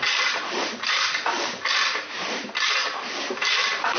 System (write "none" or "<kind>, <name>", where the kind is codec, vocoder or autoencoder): vocoder, BigVGAN v2